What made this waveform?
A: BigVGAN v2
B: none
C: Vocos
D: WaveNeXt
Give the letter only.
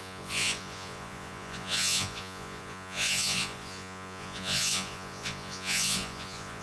C